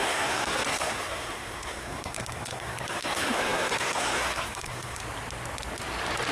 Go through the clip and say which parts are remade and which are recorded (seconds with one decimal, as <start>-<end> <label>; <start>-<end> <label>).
0.0-5.0 remade; 5.0-6.3 recorded

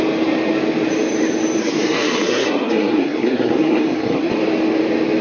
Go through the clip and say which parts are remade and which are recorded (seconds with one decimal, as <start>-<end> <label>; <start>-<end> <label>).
0.0-1.6 recorded; 1.6-4.3 remade; 4.3-5.2 recorded